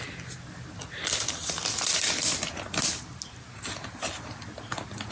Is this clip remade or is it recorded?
recorded